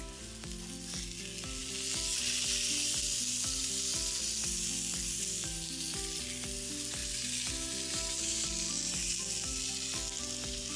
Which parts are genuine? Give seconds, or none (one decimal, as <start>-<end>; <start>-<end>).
0.0-10.8